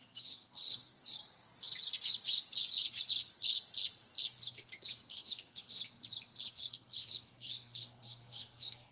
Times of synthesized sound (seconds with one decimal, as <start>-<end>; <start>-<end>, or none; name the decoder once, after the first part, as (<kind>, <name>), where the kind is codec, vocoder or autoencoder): 0.0-1.2 (codec, SNAC); 5.1-5.8; 6.5-8.9